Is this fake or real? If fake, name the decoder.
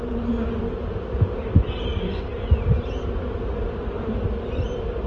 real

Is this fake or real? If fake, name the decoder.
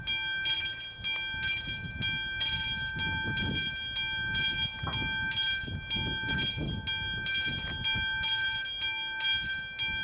real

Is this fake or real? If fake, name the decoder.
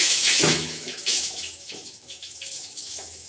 fake, autoencoder, DAC-VAE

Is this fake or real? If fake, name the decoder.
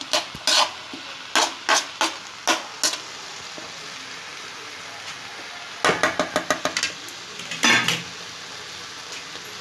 real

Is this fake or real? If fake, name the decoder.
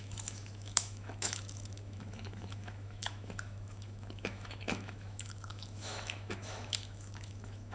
fake, autoencoder, DAC-VAE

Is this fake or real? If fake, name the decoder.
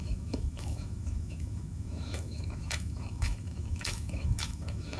fake, autoencoder, DAC-VAE